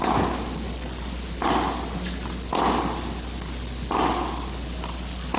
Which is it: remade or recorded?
recorded